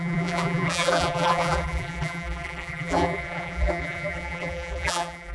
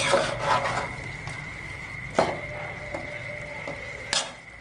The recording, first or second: second